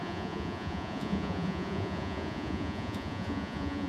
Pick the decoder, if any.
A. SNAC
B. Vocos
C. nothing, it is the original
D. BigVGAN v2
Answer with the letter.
B